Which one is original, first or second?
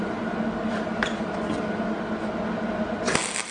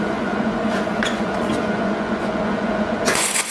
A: first